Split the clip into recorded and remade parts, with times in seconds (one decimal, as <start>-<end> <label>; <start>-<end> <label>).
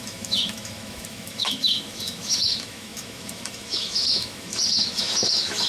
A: 0.0-5.7 remade